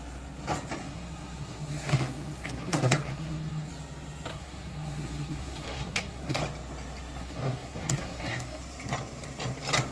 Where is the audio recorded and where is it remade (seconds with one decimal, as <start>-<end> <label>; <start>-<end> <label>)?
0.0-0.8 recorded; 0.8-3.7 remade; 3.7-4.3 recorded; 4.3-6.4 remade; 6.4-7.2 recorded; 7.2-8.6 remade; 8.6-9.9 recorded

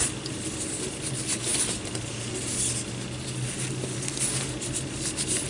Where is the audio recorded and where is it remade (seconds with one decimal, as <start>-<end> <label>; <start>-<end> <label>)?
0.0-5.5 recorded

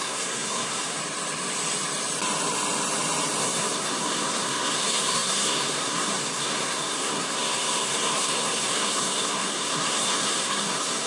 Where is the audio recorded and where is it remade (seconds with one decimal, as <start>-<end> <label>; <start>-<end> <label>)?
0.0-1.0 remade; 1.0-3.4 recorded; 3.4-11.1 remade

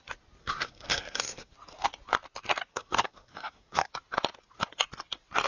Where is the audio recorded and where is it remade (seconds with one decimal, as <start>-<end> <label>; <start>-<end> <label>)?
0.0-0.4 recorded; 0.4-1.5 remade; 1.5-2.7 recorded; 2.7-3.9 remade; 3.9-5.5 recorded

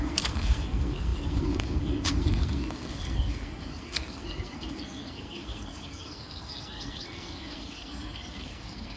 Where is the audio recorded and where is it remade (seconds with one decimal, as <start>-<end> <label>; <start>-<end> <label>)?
0.0-9.0 remade

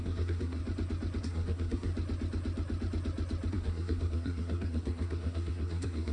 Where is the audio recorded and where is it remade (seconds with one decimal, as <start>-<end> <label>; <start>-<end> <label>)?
0.0-0.6 remade; 0.6-1.2 recorded; 1.2-1.9 remade; 1.9-3.5 recorded; 3.5-6.1 remade